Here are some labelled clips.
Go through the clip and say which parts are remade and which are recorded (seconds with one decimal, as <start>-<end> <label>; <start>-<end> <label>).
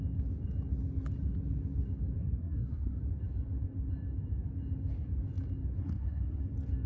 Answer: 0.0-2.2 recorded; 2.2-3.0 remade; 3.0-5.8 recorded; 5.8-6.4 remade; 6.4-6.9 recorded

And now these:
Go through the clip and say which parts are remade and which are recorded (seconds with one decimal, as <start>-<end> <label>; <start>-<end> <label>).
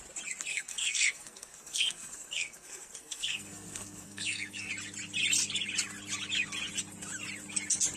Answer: 0.0-0.5 recorded; 0.5-4.7 remade; 4.7-8.0 recorded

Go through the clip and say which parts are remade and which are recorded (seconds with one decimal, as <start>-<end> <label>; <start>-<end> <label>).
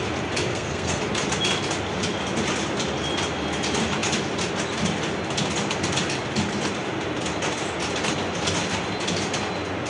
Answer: 0.0-0.5 recorded; 0.5-1.0 remade; 1.0-9.9 recorded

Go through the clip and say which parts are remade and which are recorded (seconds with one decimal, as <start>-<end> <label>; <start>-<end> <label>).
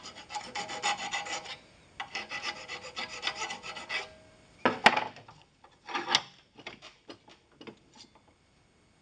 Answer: 0.0-9.0 recorded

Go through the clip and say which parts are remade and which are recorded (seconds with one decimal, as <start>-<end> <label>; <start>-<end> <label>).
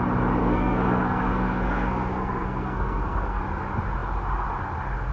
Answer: 0.0-0.4 recorded; 0.4-3.4 remade; 3.4-5.1 recorded